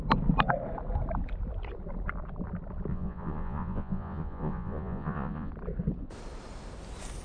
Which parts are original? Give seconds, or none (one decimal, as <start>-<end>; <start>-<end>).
0.0-2.9; 5.5-7.2